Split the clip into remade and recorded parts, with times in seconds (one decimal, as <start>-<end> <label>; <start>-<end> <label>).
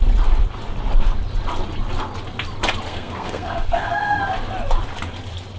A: 0.0-2.9 recorded; 2.9-4.2 remade; 4.2-5.6 recorded